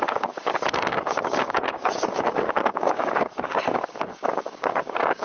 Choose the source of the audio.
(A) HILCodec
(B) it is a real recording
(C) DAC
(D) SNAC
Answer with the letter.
C